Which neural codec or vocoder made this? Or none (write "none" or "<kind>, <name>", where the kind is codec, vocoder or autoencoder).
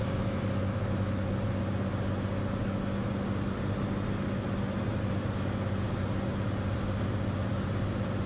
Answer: none